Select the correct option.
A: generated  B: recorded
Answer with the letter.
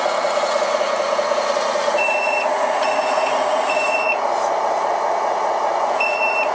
A